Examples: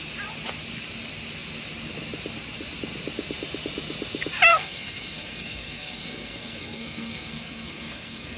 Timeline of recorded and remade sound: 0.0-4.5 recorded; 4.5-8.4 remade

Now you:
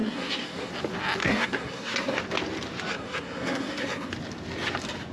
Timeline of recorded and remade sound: 0.0-0.7 remade; 0.7-1.2 recorded; 1.2-2.2 remade; 2.2-2.9 recorded; 2.9-4.1 remade; 4.1-5.1 recorded